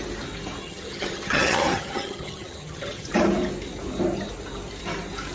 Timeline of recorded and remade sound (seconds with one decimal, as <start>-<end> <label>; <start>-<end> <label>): 0.0-0.6 recorded; 0.6-3.1 remade; 3.1-5.3 recorded